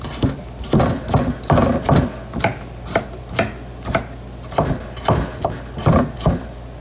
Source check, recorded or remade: recorded